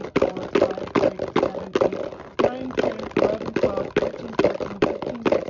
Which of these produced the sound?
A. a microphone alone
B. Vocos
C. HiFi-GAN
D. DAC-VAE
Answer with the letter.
A